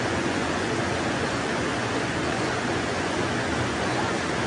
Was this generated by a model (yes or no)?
yes